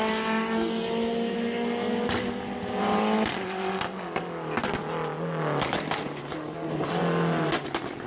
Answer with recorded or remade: recorded